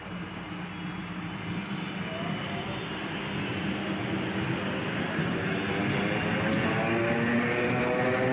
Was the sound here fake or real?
real